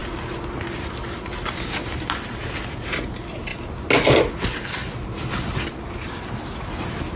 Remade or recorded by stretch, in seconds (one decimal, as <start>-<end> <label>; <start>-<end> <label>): 0.0-7.2 recorded